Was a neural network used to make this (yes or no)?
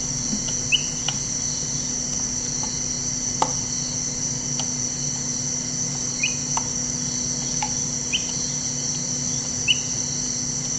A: no